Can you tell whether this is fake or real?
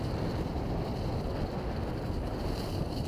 real